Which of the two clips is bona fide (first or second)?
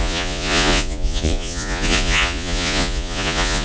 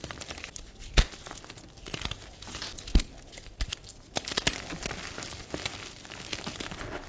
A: second